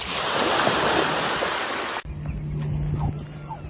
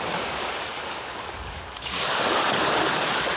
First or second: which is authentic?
first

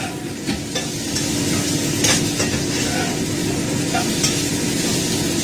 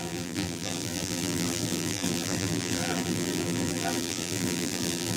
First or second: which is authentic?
first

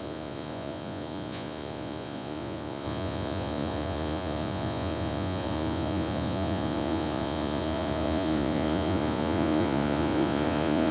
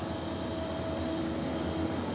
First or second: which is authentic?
second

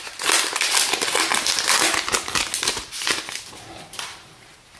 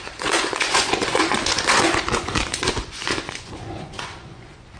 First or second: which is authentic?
first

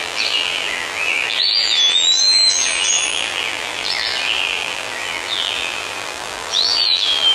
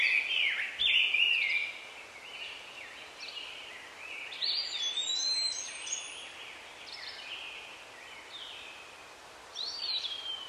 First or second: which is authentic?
second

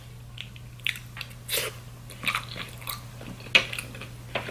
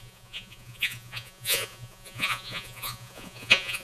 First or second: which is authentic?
first